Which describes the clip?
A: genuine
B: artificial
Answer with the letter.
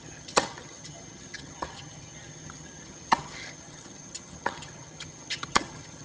B